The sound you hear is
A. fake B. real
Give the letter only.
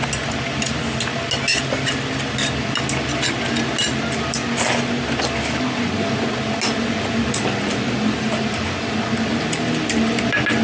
B